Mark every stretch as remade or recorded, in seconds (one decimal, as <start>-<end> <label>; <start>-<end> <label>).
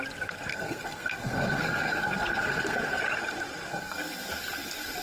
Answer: 0.0-0.5 recorded; 0.5-3.0 remade; 3.0-3.7 recorded; 3.7-4.3 remade; 4.3-5.0 recorded